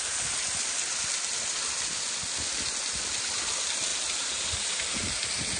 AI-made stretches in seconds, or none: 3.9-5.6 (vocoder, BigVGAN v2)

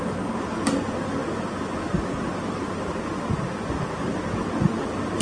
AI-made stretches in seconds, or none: none

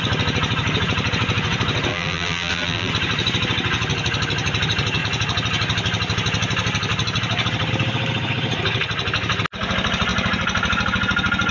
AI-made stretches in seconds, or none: 1.9-2.9 (vocoder, BigVGAN v2)

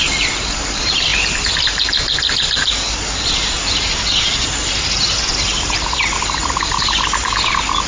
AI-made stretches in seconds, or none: 0.0-7.9 (vocoder, BigVGAN v2)

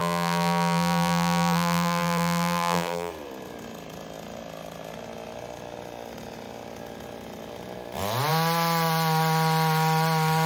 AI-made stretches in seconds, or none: 0.0-3.1 (vocoder, BigVGAN v2)

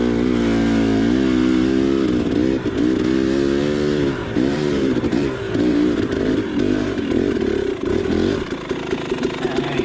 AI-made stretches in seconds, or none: 4.2-7.3 (vocoder, BigVGAN v2)

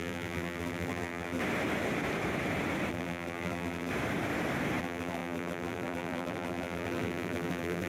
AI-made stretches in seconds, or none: 0.0-1.4 (vocoder, BigVGAN v2); 2.9-3.9; 4.8-7.9

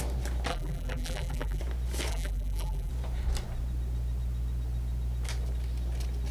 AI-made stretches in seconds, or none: 0.5-1.6 (vocoder, BigVGAN v2); 2.1-2.9